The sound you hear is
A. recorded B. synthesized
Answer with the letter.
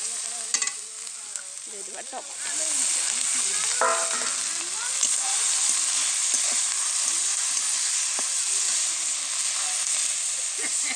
A